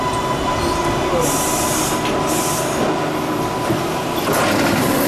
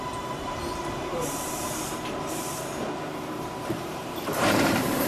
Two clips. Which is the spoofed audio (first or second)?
second